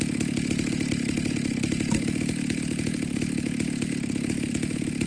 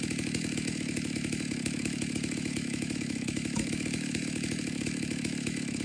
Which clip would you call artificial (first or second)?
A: second